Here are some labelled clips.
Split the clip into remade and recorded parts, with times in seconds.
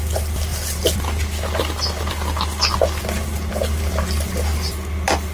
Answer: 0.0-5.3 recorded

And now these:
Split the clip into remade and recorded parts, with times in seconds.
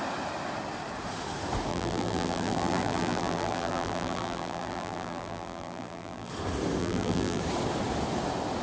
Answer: 0.0-1.7 recorded; 1.7-6.3 remade; 6.3-6.8 recorded; 6.8-7.4 remade; 7.4-8.6 recorded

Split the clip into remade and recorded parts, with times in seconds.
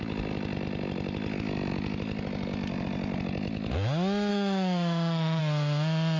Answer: 0.0-4.3 recorded; 4.3-5.4 remade; 5.4-6.2 recorded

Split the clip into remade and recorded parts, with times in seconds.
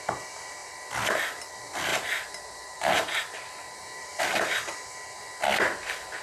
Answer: 0.0-1.9 recorded; 1.9-4.2 remade; 4.2-6.2 recorded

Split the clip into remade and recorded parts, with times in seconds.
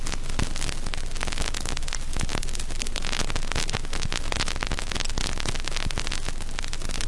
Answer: 0.0-7.1 recorded